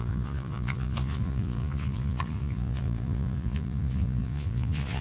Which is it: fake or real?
fake